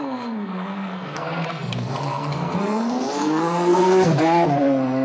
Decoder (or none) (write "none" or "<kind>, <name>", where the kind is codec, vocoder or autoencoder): codec, SNAC